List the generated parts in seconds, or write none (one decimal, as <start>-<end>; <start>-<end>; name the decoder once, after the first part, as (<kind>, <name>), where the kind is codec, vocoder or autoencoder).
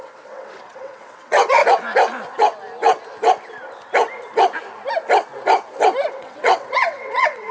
0.0-1.6 (vocoder, WaveNeXt); 6.1-7.5